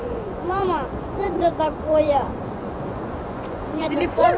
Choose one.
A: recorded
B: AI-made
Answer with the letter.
B